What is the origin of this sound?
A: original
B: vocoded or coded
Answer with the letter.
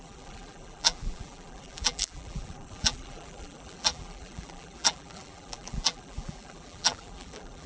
B